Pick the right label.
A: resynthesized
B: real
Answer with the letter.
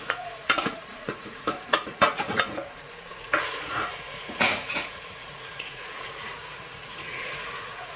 A